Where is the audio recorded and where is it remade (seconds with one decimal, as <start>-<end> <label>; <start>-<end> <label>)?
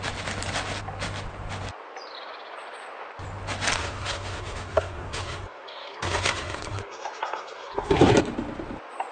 0.0-3.8 recorded; 3.8-8.1 remade; 8.1-9.1 recorded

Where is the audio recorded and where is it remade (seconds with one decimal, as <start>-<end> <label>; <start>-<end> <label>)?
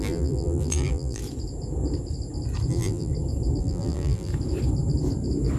0.0-1.2 remade; 1.2-2.7 recorded; 2.7-3.1 remade; 3.1-3.6 recorded; 3.6-4.3 remade; 4.3-5.6 recorded